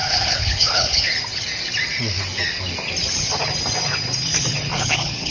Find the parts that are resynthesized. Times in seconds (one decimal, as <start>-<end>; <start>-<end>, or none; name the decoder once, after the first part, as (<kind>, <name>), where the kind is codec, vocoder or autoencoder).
0.0-1.1 (codec, HILCodec); 4.7-5.3